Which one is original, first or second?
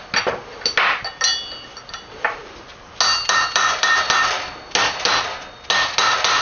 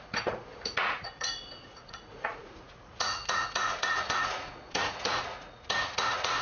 first